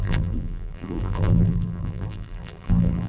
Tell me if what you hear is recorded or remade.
remade